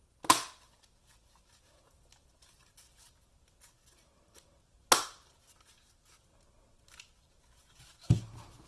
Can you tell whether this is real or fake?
real